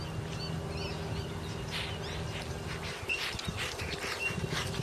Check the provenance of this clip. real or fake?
real